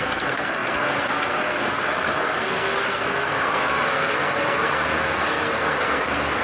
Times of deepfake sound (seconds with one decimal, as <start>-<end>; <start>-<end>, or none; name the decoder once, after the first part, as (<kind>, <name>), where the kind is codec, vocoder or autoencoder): 0.0-6.4 (codec, SNAC)